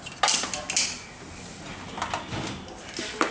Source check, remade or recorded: recorded